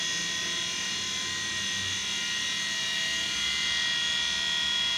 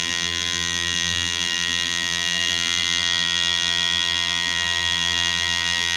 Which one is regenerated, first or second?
second